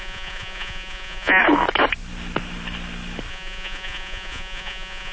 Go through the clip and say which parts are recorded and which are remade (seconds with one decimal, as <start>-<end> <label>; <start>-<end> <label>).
0.0-1.4 remade; 1.4-3.3 recorded; 3.3-5.1 remade